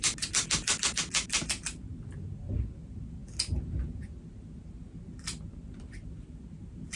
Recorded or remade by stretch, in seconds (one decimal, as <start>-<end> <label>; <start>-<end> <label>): 0.0-7.0 recorded